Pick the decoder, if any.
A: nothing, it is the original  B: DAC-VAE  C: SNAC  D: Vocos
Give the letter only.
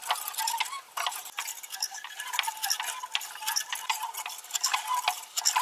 A